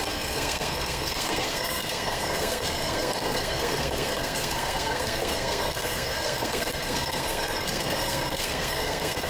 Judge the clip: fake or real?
fake